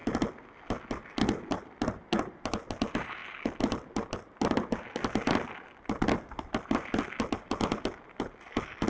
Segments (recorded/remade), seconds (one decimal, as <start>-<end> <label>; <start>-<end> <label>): 0.0-8.9 recorded